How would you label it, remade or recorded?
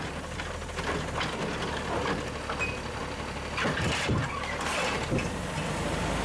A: recorded